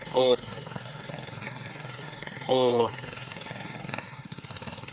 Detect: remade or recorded remade